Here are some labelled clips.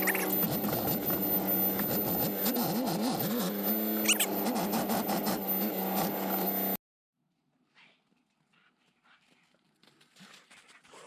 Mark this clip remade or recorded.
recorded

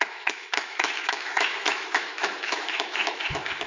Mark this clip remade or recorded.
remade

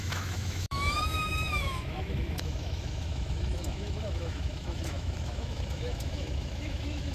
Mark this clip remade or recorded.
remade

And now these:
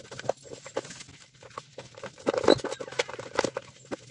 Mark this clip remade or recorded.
recorded